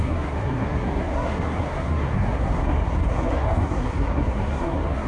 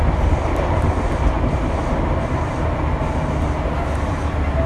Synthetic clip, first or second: first